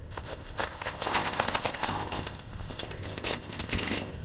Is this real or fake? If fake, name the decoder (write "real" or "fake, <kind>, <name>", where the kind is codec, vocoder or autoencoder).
fake, codec, ZipCodec